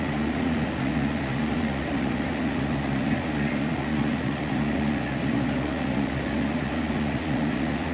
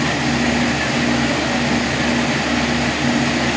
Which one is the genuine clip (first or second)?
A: second